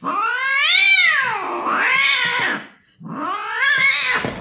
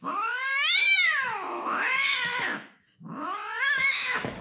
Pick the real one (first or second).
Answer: first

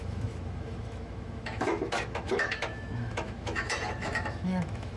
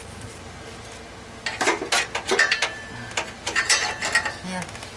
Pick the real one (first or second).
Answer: second